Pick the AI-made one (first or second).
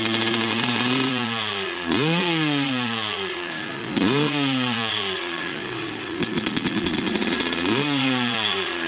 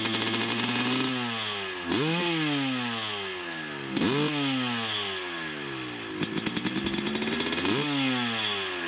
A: first